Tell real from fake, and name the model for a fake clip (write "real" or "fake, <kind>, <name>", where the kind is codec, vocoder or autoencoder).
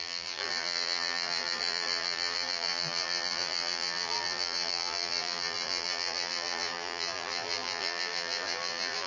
fake, vocoder, BigVGAN v2